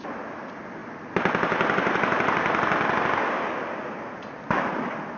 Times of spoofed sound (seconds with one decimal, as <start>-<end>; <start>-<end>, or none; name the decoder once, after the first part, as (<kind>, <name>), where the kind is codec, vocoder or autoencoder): none